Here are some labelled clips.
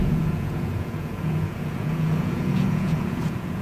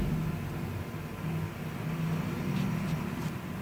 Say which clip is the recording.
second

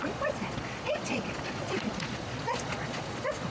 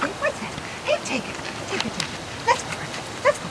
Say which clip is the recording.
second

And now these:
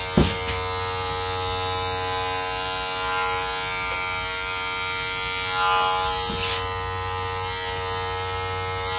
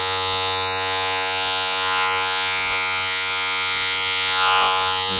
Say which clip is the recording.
first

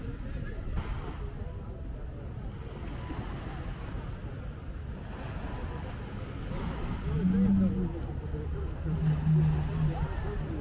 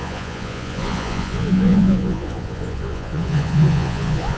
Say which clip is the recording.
first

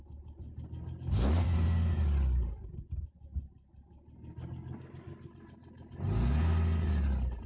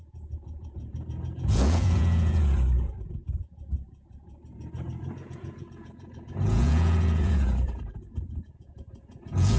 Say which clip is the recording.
first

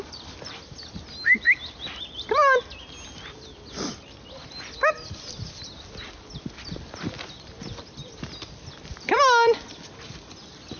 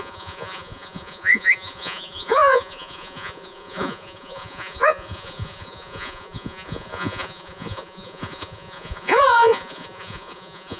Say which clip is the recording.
first